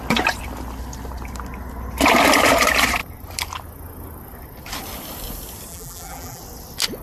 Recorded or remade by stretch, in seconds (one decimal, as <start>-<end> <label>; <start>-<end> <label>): 0.0-5.7 recorded; 5.7-6.4 remade; 6.4-7.0 recorded